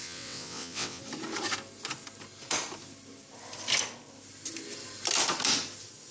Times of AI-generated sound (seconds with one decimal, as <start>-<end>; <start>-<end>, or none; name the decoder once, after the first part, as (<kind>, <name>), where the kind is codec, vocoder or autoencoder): 0.0-1.0 (vocoder, WaveNeXt)